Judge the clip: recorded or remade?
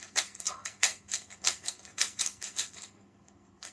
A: remade